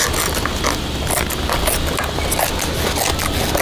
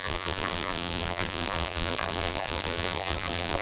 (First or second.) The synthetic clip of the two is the second